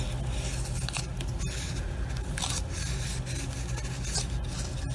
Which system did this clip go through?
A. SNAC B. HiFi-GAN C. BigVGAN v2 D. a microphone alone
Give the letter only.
D